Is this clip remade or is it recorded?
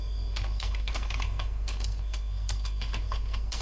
remade